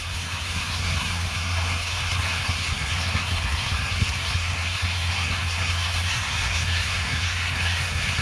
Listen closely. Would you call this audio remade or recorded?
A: remade